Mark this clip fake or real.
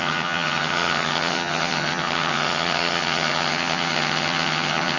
fake